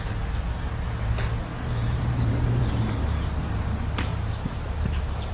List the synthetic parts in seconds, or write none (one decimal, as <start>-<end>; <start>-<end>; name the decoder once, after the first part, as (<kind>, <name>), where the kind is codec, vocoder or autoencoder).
1.5-2.6 (vocoder, BigVGAN v2); 4.1-5.3